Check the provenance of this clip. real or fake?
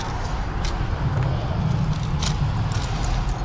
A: real